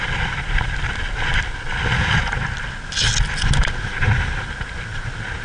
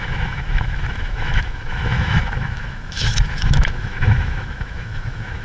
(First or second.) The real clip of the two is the first